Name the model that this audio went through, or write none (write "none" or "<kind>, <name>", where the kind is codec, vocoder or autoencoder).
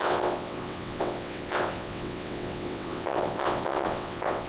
vocoder, WaveNeXt